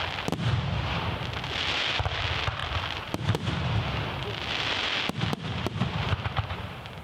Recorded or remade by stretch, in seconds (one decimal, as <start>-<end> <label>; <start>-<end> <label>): 0.0-7.0 recorded